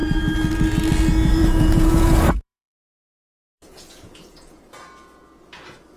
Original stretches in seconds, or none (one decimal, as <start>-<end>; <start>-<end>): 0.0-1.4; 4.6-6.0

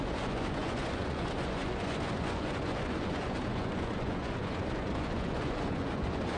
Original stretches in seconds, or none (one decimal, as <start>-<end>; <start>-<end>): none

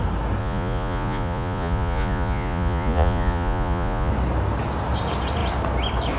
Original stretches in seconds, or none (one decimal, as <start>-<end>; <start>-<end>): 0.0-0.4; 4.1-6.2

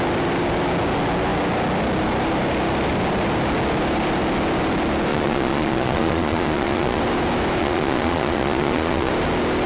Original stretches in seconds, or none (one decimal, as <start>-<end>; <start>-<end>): 0.0-5.1; 7.0-7.6; 9.1-9.7

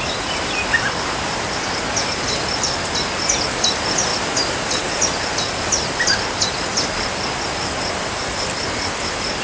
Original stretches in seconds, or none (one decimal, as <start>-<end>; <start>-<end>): 0.0-9.4

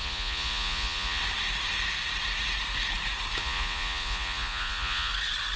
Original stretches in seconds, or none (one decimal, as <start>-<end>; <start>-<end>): 1.2-3.4; 5.1-5.6

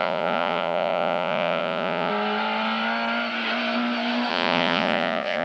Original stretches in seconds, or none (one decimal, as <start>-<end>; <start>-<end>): 2.1-4.3